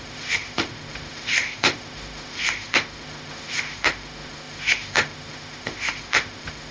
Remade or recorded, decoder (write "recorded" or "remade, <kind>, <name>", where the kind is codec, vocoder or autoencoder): remade, autoencoder, DAC-VAE